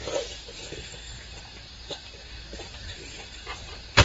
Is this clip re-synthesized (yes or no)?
yes